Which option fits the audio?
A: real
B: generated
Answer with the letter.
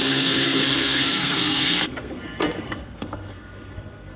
B